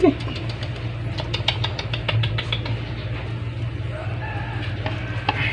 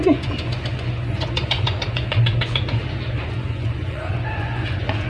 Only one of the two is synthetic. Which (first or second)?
second